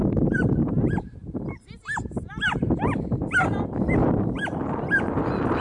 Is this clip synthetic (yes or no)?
no